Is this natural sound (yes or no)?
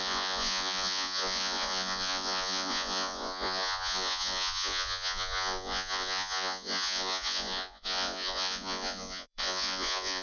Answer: no